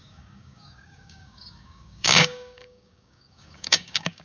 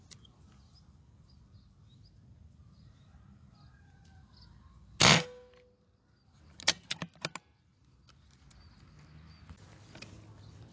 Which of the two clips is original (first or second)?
second